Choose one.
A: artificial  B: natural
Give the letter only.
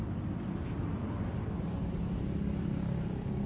A